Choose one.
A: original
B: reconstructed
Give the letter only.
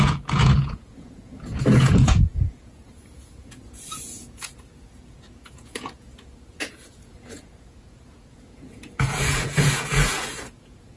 B